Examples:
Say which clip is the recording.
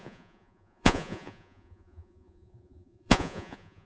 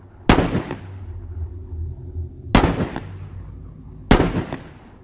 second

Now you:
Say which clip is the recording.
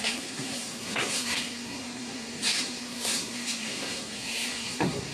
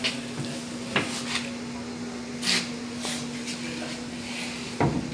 second